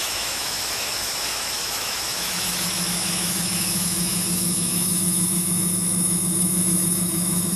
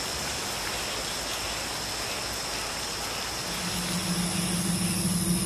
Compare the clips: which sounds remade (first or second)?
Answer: first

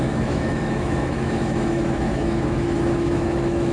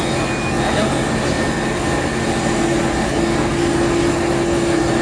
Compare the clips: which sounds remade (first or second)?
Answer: first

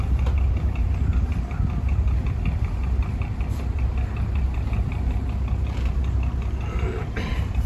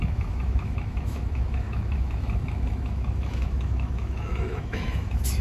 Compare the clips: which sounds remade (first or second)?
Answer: second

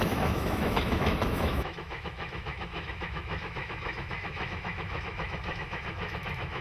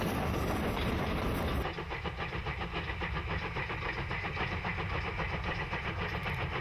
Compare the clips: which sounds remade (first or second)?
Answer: first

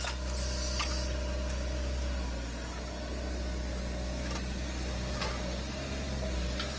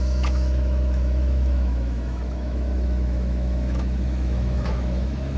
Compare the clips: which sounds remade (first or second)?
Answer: second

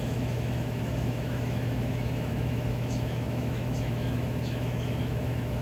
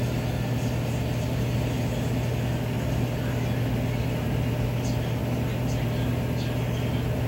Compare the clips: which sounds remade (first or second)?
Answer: first